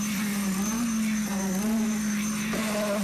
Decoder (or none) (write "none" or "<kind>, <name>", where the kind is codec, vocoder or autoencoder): none